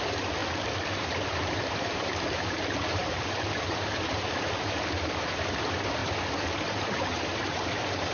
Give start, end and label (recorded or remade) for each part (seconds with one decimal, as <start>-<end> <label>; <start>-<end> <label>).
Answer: 0.0-0.4 remade; 0.4-0.9 recorded; 0.9-8.1 remade